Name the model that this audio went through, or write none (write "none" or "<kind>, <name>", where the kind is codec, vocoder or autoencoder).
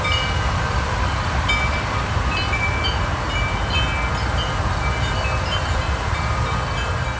none